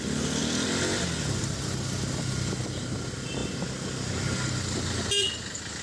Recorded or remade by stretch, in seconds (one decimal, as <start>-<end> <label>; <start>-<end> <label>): 0.0-5.8 recorded